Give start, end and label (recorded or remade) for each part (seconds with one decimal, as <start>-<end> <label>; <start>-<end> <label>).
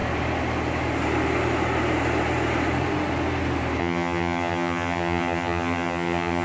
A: 0.0-3.8 recorded; 3.8-6.4 remade